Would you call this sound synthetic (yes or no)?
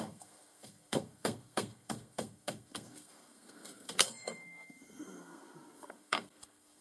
yes